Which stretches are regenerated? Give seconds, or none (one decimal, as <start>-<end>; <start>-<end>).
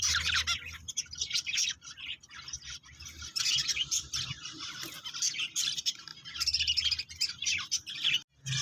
none